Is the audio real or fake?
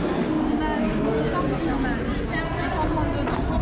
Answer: real